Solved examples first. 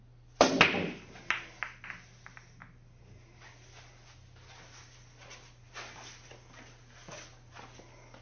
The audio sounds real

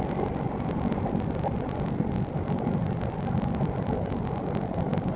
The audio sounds real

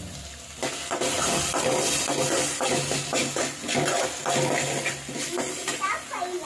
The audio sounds real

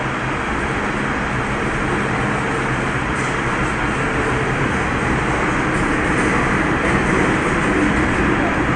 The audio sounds real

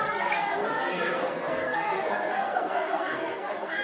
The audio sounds fake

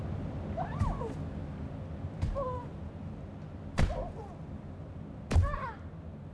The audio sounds real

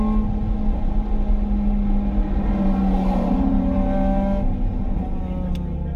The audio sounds real